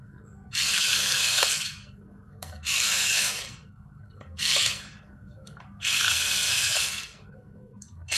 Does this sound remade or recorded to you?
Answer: remade